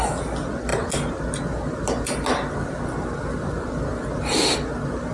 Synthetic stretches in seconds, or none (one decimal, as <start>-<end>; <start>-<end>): none